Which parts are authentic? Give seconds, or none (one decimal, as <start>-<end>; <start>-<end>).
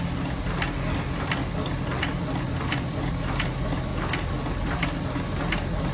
0.0-5.9